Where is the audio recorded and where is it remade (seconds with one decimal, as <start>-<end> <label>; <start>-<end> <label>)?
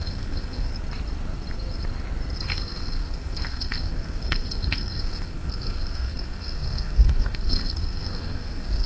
0.0-0.7 remade; 0.7-2.5 recorded; 2.5-8.9 remade